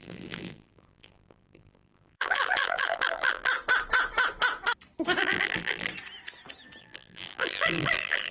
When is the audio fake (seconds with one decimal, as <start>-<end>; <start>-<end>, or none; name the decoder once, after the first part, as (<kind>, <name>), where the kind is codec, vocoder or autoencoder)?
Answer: 0.0-3.5 (vocoder, BigVGAN v2); 5.2-5.9; 6.8-8.3